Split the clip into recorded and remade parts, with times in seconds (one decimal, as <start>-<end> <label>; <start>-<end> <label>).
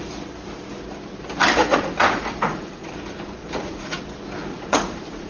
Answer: 0.0-1.6 recorded; 1.6-2.9 remade; 2.9-3.4 recorded; 3.4-4.0 remade; 4.0-4.5 recorded; 4.5-5.3 remade